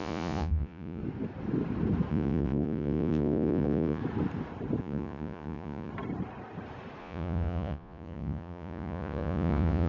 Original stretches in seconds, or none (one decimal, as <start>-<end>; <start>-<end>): 1.0-2.1; 4.0-4.8; 5.9-7.0